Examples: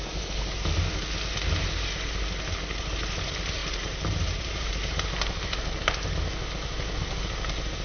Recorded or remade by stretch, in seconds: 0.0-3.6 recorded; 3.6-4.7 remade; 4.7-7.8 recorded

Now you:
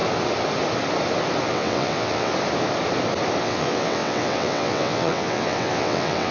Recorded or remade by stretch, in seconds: 0.0-1.5 recorded; 1.5-2.3 remade; 2.3-3.4 recorded; 3.4-6.3 remade

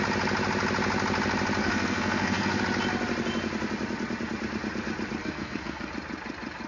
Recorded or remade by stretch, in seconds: 0.0-1.6 recorded; 1.6-2.6 remade; 2.6-5.2 recorded; 5.2-5.9 remade; 5.9-6.7 recorded